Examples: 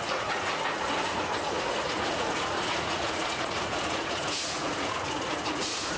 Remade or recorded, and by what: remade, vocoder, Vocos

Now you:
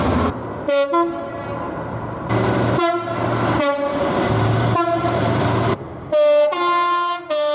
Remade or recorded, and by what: remade, vocoder, BigVGAN v2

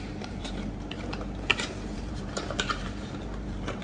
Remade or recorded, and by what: remade, vocoder, BigVGAN v2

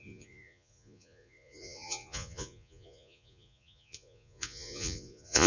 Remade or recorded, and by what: remade, vocoder, Vocos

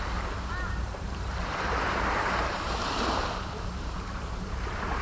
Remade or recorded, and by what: remade, vocoder, BigVGAN v2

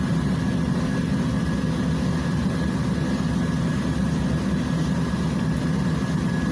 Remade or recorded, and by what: recorded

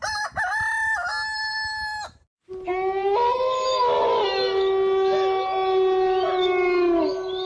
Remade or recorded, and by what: recorded